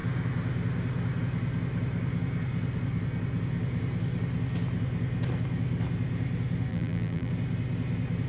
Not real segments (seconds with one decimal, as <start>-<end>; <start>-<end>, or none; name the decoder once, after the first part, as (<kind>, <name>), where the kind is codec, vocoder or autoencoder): 6.7-7.3 (vocoder, BigVGAN v2)